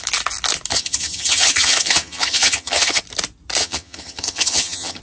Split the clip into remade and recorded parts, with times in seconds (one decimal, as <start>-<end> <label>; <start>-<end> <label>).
0.0-0.7 recorded; 0.7-3.0 remade; 3.0-3.6 recorded; 3.6-5.0 remade

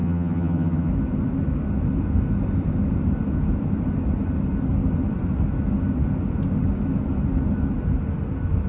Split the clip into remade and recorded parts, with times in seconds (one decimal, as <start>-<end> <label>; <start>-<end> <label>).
0.0-0.9 remade; 0.9-8.7 recorded